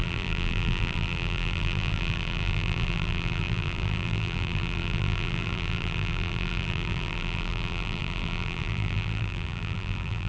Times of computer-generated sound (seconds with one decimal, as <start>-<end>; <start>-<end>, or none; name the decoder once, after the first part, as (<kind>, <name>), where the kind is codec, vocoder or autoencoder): 0.0-10.3 (vocoder, BigVGAN v2)